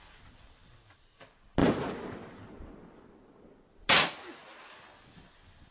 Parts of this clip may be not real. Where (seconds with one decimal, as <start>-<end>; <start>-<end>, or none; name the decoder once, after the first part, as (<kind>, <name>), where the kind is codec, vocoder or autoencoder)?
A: none